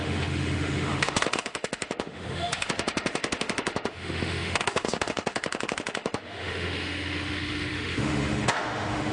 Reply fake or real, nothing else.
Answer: fake